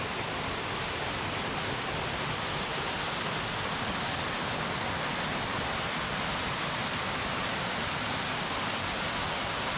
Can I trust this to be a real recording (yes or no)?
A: yes